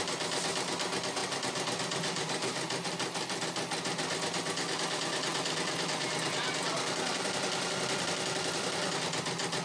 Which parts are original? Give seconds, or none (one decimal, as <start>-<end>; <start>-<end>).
0.0-1.2; 3.4-5.3; 9.1-9.6